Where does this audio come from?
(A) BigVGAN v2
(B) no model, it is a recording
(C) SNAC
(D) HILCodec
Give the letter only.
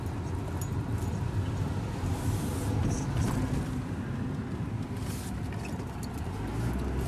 B